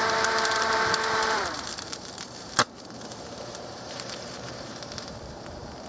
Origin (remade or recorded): remade